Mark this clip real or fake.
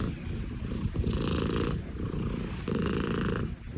real